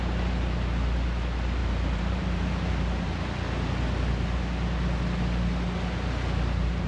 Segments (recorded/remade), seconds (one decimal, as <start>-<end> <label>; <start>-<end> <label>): 0.0-1.6 recorded; 1.6-2.7 remade; 2.7-6.9 recorded